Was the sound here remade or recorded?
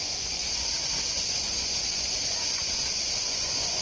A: remade